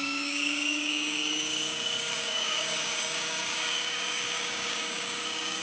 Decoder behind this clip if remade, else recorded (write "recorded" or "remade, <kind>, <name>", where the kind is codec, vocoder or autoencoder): remade, codec, DAC